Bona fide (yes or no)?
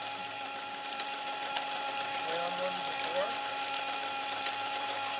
yes